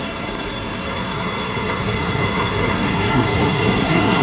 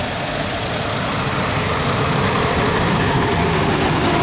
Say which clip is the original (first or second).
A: second